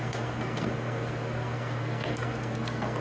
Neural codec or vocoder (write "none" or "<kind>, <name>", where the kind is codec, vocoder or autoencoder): codec, SNAC